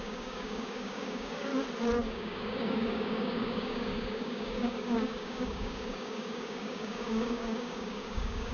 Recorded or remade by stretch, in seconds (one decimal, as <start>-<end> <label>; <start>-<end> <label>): 0.0-1.5 remade; 1.5-2.0 recorded; 2.0-8.5 remade